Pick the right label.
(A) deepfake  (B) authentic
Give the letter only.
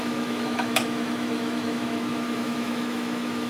A